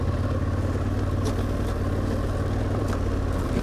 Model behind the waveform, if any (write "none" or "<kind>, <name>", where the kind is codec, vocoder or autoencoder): none